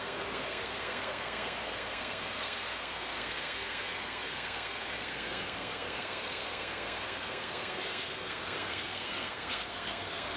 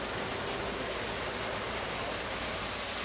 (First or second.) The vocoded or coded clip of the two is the first